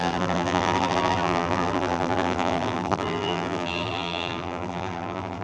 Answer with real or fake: fake